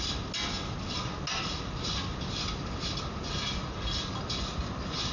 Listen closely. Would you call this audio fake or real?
real